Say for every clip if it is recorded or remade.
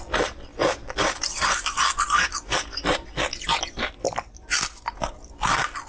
recorded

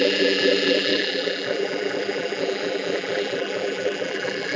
remade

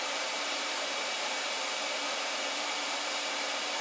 remade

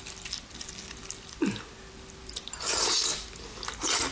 recorded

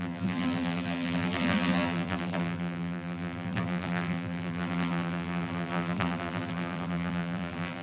remade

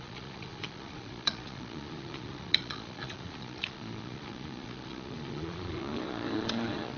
remade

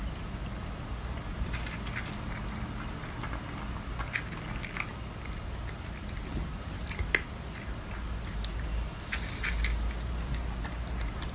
recorded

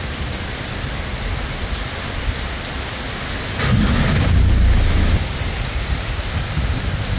recorded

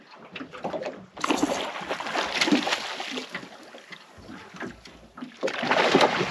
recorded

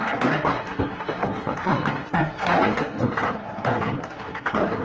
remade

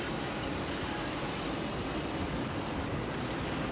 recorded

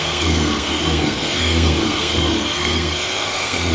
remade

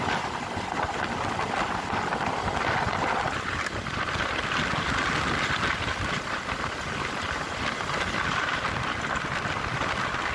recorded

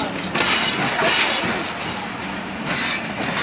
recorded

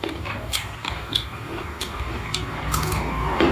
remade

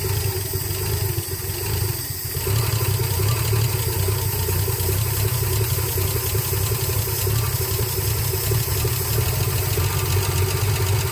recorded